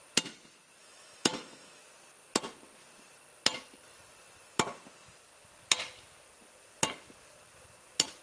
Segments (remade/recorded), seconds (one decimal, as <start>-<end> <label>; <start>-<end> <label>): 0.0-0.8 recorded; 0.8-1.8 remade; 1.8-8.2 recorded